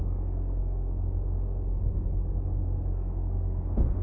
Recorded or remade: remade